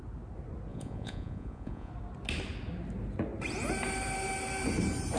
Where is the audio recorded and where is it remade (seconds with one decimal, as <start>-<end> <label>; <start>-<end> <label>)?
0.0-0.7 recorded; 0.7-1.9 remade; 1.9-5.2 recorded